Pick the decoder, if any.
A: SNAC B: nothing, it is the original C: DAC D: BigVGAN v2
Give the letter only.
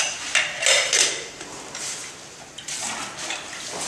B